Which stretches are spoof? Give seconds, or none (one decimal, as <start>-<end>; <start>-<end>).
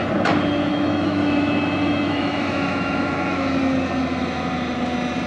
0.7-3.6